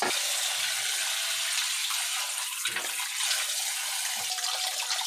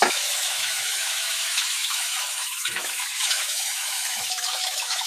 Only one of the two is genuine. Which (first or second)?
first